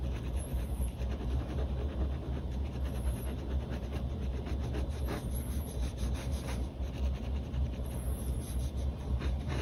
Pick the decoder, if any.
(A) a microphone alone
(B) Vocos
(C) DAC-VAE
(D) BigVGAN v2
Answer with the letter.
D